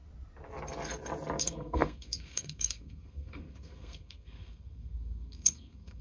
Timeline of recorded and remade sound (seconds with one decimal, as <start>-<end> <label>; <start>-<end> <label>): 0.0-1.4 recorded; 1.4-6.0 remade